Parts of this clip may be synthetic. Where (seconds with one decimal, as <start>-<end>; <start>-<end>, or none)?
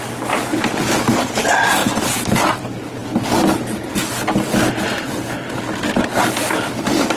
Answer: 0.5-1.4